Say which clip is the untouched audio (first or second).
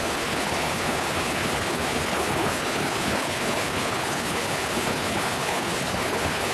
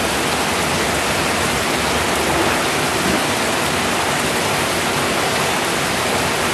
second